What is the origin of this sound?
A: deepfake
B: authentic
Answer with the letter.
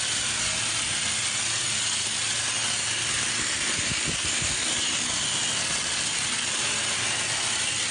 B